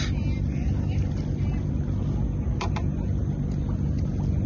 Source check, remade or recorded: recorded